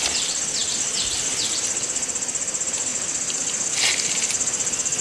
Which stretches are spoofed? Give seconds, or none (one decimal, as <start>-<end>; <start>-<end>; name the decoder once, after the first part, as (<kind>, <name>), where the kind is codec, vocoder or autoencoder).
none